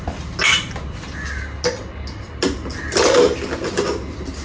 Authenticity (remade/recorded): recorded